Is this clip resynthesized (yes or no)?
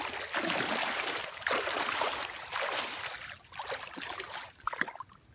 no